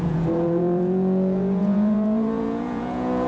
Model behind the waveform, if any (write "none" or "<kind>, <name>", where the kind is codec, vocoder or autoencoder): vocoder, Vocos